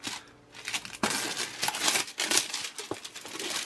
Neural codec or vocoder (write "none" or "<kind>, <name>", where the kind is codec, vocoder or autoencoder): none